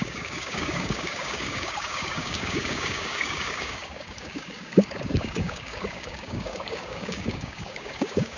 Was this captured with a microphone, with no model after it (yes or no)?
no